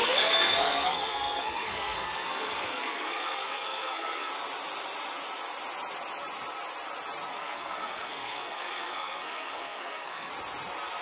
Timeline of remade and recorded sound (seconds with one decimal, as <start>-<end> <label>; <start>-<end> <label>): 0.0-4.3 remade; 4.3-7.3 recorded; 7.3-10.3 remade; 10.3-11.0 recorded